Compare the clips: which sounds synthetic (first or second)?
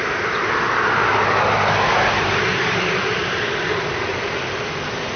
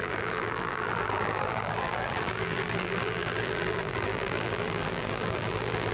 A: second